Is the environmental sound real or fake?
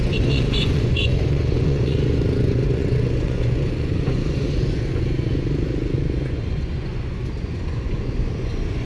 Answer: fake